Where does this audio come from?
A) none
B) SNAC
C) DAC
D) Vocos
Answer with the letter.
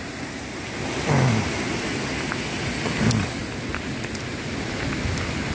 A